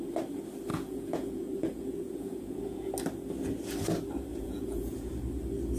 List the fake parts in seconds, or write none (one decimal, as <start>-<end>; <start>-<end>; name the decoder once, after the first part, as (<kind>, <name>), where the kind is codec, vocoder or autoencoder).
0.7-2.9 (vocoder, Vocos); 4.3-5.1